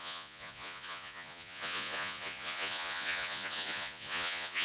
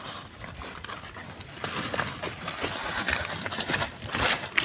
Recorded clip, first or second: second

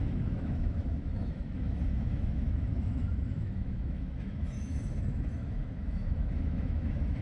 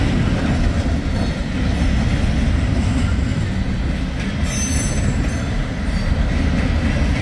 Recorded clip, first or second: second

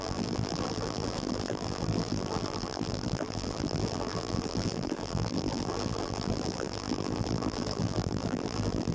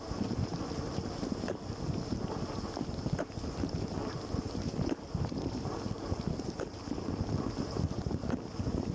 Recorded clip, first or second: second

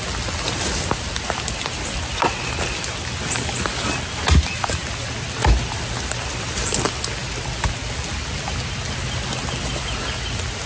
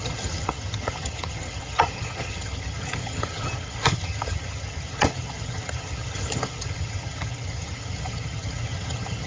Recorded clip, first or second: first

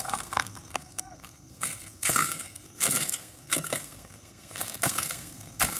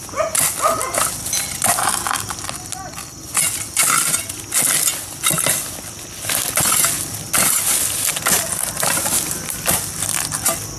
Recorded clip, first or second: second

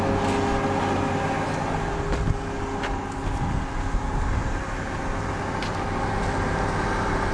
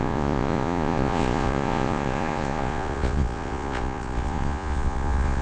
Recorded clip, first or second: first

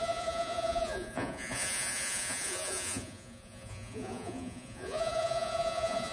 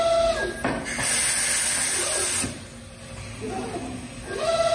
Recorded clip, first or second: second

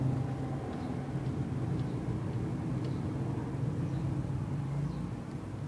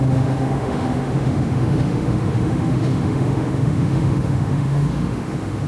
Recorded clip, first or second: first